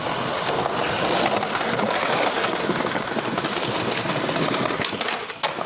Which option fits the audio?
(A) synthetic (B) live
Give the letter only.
B